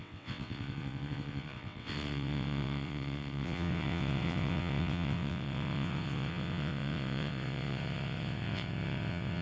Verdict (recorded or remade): remade